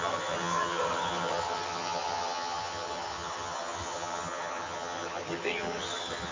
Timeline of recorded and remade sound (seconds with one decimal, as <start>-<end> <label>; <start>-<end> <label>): 0.0-6.3 remade